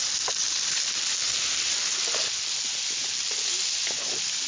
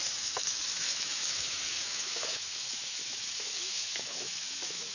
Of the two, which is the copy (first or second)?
second